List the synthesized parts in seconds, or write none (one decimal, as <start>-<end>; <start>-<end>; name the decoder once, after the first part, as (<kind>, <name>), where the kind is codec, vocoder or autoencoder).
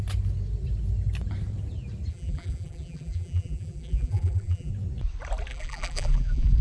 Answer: 2.1-4.7 (vocoder, BigVGAN v2); 5.5-6.6